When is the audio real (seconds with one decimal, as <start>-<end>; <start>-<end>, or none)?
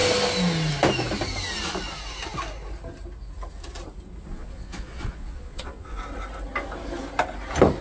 0.0-4.3; 6.0-7.8